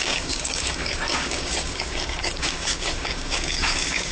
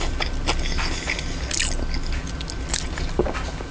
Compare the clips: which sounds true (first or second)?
second